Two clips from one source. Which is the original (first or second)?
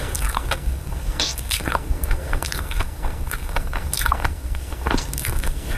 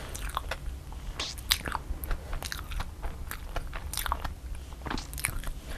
second